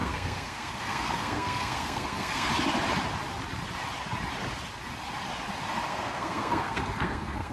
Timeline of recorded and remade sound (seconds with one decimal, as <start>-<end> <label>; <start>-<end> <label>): 0.0-2.5 remade; 2.5-5.9 recorded; 5.9-7.5 remade